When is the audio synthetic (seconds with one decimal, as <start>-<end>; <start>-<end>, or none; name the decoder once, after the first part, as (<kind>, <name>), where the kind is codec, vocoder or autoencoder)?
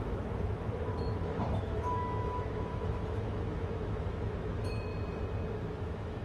0.0-4.9 (autoencoder, DAC-VAE); 5.8-6.2